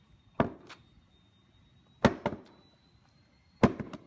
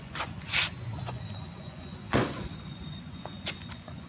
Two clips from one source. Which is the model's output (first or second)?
second